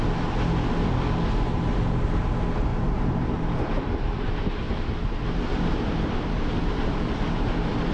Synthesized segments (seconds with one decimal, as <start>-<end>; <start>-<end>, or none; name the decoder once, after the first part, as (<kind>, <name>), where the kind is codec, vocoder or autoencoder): 2.7-4.3 (vocoder, BigVGAN v2); 5.5-7.2